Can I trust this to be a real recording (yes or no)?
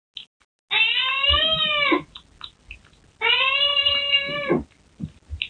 yes